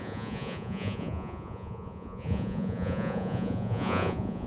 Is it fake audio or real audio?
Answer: fake